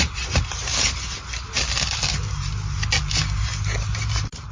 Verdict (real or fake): real